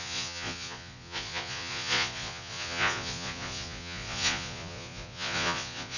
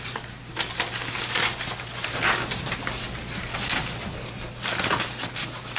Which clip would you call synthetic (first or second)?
first